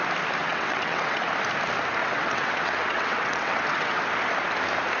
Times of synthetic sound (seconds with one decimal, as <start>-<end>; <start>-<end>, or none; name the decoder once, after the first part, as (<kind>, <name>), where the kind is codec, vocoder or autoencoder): 0.4-1.3 (vocoder, WaveNeXt); 2.0-4.0